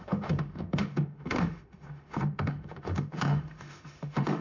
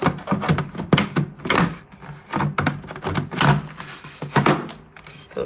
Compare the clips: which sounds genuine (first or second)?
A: second